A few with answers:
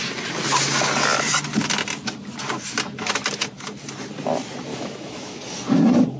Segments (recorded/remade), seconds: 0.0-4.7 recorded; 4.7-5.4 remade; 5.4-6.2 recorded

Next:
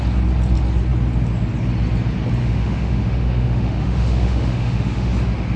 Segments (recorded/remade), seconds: 0.0-2.4 recorded; 2.4-5.1 remade; 5.1-5.6 recorded

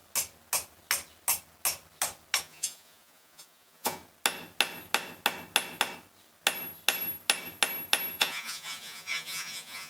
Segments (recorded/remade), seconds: 0.0-2.4 recorded; 2.4-4.0 remade; 4.0-8.1 recorded; 8.1-9.9 remade

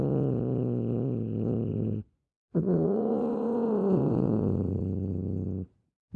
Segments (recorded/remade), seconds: 0.0-1.7 recorded; 1.7-4.8 remade; 4.8-6.2 recorded

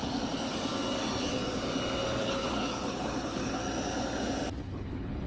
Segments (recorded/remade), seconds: 0.0-2.2 recorded; 2.2-3.6 remade; 3.6-4.6 recorded; 4.6-5.3 remade